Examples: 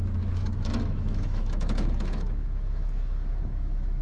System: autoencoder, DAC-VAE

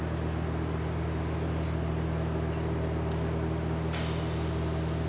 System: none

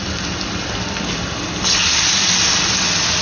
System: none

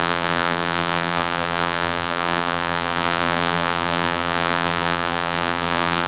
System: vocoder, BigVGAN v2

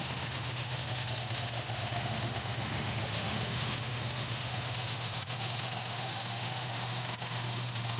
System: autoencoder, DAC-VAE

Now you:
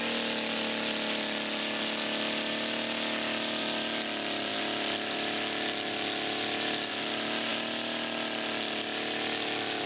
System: none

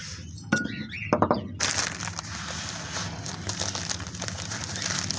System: none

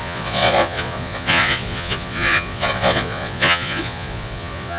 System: vocoder, Vocos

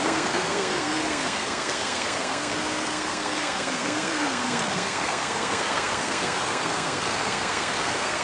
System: codec, SNAC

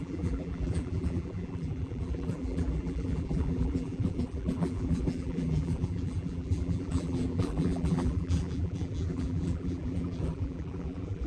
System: vocoder, BigVGAN v2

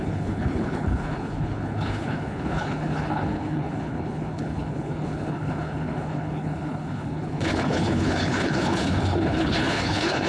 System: codec, HILCodec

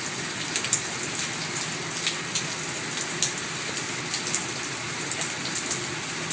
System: none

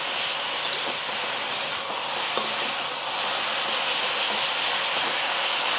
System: none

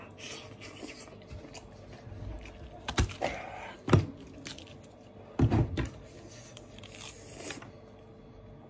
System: none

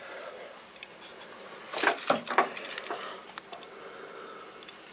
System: none